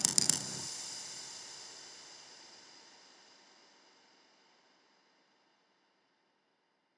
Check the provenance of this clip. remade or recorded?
recorded